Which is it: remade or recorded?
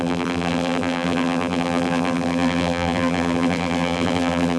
remade